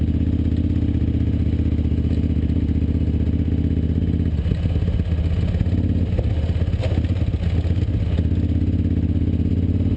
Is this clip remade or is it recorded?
recorded